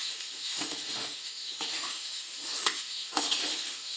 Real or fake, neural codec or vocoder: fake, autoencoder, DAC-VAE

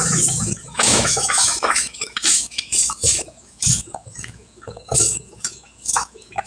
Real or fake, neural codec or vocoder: fake, autoencoder, DAC-VAE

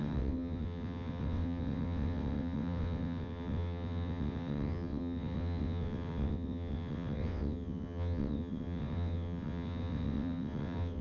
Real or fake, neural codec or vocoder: fake, vocoder, WaveNeXt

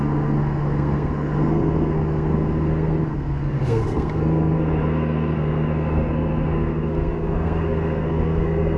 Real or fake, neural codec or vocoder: fake, codec, SNAC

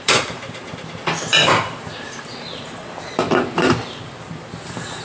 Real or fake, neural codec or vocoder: fake, vocoder, BigVGAN v2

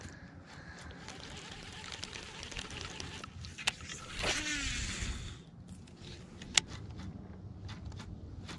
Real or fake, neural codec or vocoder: real